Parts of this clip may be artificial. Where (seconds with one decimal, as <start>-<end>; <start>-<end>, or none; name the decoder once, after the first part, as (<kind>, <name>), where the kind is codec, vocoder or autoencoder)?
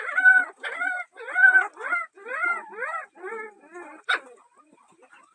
none